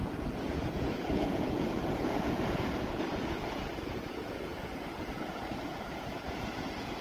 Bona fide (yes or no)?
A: no